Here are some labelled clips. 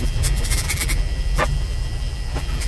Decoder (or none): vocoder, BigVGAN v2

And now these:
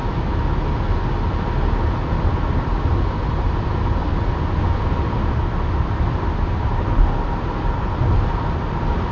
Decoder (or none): none